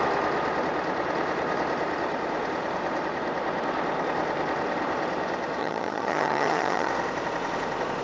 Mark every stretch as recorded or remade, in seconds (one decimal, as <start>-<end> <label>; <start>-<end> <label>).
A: 0.0-5.6 recorded; 5.6-6.9 remade; 6.9-8.0 recorded